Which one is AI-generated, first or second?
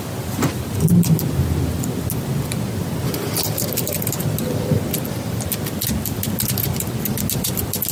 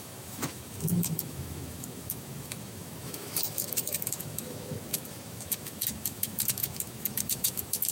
second